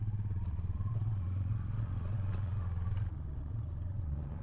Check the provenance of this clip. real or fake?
fake